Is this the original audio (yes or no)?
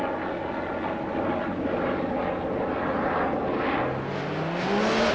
yes